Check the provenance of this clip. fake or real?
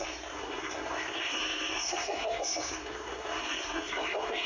fake